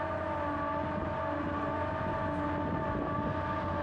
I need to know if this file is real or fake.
real